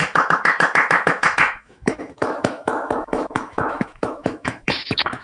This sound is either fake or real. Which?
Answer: fake